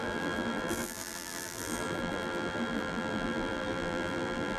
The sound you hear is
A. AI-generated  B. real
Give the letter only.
A